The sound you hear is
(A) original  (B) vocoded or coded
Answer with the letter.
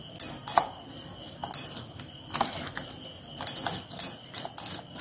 A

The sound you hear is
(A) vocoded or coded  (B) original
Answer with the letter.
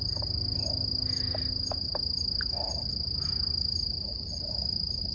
B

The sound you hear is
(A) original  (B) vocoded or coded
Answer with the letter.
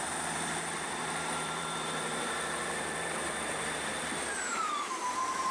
B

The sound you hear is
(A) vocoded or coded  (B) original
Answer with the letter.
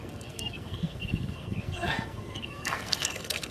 A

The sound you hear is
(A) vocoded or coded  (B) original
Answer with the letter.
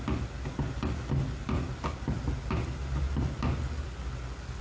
B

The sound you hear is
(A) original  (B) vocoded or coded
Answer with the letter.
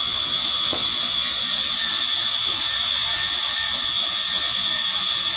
B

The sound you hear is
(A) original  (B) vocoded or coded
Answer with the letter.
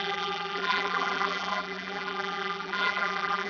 B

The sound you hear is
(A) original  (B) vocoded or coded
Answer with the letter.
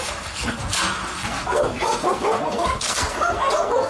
B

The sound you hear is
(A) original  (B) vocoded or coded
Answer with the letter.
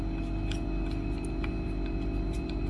A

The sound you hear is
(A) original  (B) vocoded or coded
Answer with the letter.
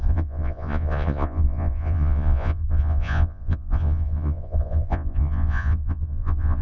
B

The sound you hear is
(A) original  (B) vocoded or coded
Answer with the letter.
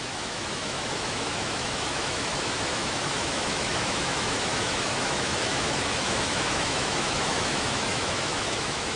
B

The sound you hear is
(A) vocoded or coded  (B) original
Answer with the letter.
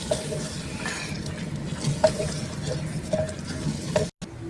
B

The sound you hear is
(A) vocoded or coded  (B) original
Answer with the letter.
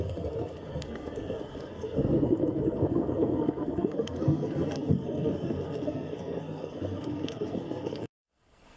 A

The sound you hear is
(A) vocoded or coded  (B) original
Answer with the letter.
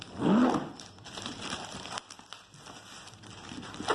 B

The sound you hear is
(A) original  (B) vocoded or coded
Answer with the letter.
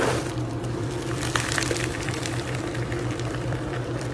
B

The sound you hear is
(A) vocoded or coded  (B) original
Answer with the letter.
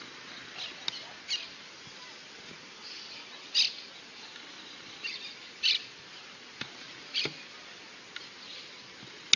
B